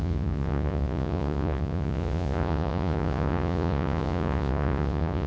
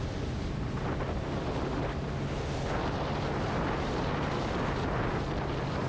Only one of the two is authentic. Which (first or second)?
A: second